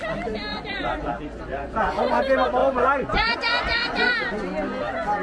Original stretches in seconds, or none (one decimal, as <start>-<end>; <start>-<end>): 0.0-0.5; 1.1-1.5; 2.2-2.6; 4.1-5.2